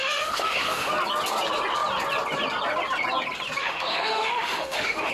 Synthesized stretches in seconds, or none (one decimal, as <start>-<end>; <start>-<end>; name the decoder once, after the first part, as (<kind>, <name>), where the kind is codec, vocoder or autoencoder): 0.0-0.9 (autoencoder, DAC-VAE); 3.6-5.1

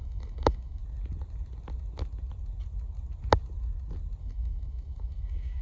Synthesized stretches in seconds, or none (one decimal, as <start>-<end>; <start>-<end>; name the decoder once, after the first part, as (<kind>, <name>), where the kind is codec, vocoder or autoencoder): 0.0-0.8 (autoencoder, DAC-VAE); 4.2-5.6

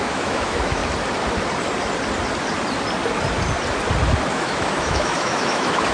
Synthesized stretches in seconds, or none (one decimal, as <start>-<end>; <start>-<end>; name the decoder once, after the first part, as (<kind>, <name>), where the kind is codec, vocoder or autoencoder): 0.0-0.8 (autoencoder, DAC-VAE); 4.3-5.9